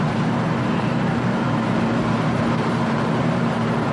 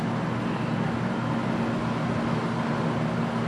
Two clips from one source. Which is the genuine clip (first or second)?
second